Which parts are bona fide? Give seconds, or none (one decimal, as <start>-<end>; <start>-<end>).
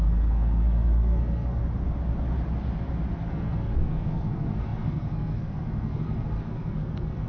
1.6-3.3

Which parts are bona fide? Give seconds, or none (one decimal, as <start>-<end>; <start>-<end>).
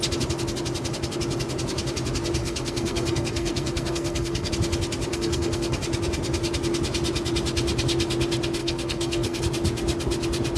0.0-2.4; 4.5-5.1; 5.8-8.6; 9.4-10.6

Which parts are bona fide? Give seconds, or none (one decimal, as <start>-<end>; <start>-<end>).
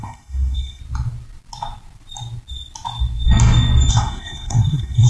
0.8-3.9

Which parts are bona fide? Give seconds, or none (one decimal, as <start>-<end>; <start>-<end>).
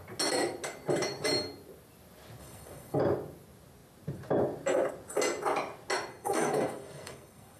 0.0-2.4; 3.0-6.1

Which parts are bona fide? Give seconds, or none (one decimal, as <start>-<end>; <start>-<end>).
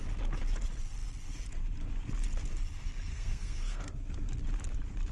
0.0-3.1; 3.8-5.1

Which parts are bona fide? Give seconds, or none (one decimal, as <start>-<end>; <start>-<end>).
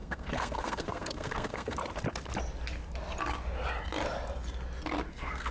1.8-5.1